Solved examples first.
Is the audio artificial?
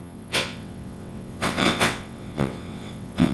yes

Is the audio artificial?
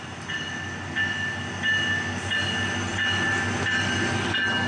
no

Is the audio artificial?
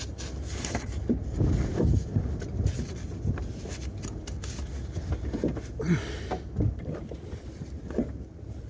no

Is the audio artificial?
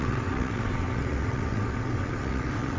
yes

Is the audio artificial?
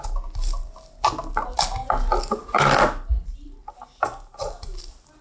no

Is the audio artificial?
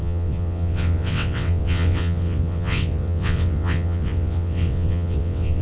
yes